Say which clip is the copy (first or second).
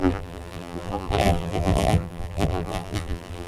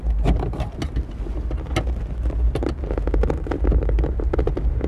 first